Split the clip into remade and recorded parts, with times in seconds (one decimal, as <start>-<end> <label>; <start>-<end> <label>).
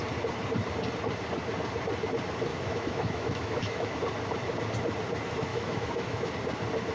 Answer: 0.0-2.5 recorded; 2.5-4.0 remade; 4.0-5.5 recorded; 5.5-6.3 remade; 6.3-6.9 recorded